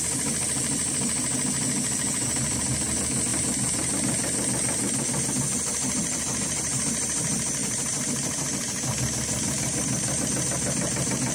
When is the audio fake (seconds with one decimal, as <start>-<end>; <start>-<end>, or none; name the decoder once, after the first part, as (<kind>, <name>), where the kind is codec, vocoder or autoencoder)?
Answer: 7.6-10.2 (vocoder, BigVGAN v2)